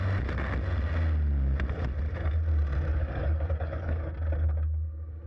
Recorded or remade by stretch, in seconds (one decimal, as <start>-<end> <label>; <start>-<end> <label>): 0.0-3.0 recorded; 3.0-4.1 remade; 4.1-5.3 recorded